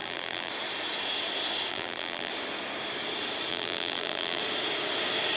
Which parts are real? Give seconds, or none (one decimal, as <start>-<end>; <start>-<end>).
0.5-1.7; 2.3-3.5; 4.4-5.4

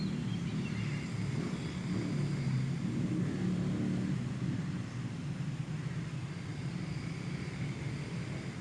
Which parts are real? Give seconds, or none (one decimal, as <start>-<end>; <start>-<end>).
0.0-6.5; 7.8-8.6

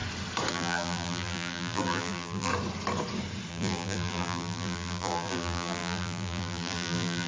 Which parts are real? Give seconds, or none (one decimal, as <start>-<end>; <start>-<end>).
0.0-0.5; 2.5-3.5

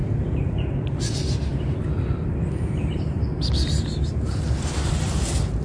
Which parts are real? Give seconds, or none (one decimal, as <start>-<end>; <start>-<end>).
0.0-1.5; 4.9-5.6